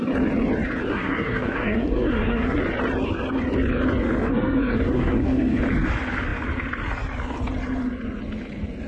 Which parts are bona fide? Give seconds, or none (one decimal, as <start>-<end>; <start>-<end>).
0.0-0.9; 2.6-4.2; 5.6-8.9